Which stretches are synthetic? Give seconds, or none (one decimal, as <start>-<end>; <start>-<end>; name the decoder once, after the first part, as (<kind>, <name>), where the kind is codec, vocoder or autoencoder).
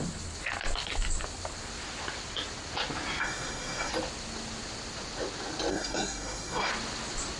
3.2-3.9 (codec, SNAC); 5.7-6.7